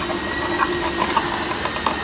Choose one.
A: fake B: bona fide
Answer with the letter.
B